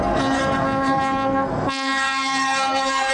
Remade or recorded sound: remade